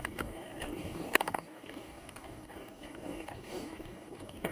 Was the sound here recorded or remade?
remade